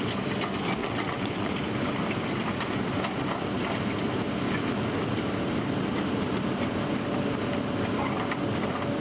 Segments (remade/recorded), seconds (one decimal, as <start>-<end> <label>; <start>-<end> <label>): 0.0-0.8 recorded; 0.8-1.5 remade; 1.5-9.0 recorded